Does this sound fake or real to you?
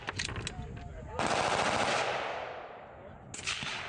real